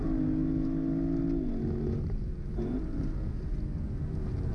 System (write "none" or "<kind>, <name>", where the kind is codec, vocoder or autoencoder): none